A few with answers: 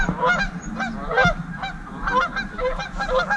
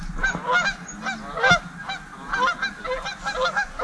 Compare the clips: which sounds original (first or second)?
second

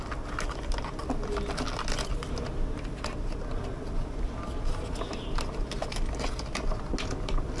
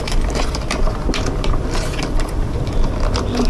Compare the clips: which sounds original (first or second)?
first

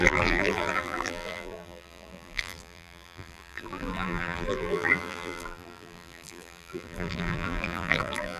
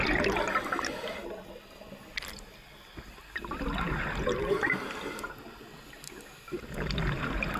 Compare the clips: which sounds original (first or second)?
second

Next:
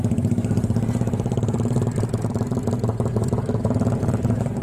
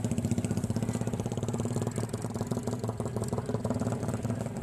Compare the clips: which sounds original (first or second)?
second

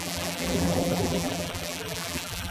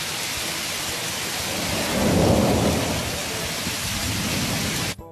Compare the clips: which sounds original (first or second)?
second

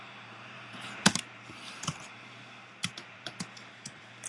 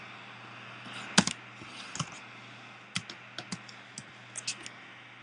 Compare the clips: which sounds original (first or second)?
second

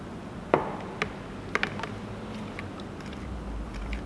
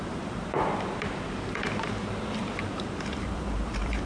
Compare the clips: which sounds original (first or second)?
first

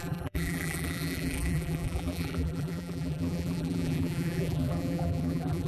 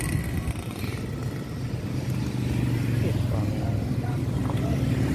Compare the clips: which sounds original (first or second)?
second